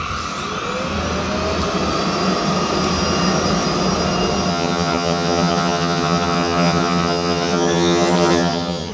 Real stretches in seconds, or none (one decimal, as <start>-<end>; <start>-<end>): 0.0-4.5